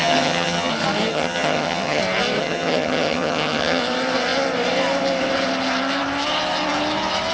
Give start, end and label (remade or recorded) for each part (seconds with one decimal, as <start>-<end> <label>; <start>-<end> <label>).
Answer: 0.0-0.7 remade; 0.7-1.1 recorded; 1.1-2.0 remade; 2.0-2.4 recorded; 2.4-3.8 remade; 3.8-7.3 recorded